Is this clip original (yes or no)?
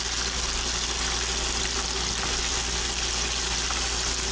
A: yes